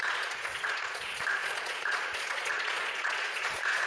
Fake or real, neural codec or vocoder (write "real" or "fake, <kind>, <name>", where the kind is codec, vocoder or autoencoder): fake, vocoder, Vocos